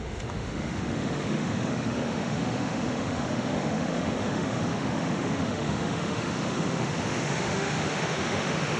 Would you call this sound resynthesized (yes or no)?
yes